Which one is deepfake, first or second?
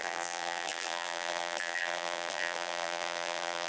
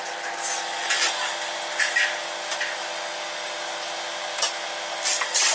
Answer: first